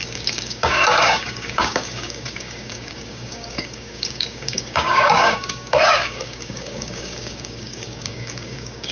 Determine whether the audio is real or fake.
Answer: fake